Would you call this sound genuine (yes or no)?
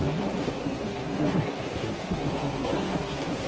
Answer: no